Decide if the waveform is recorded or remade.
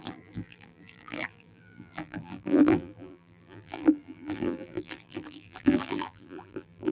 remade